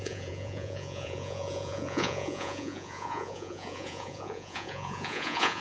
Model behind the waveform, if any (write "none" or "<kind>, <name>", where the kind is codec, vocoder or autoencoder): vocoder, Vocos